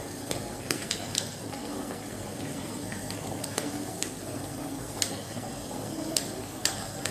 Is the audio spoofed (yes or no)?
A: yes